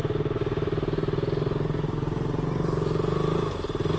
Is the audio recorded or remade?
recorded